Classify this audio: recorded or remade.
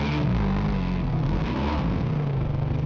remade